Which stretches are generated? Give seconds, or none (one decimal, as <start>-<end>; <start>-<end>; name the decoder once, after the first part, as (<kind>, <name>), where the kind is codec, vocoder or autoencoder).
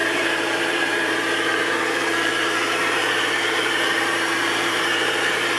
0.0-5.6 (vocoder, BigVGAN v2)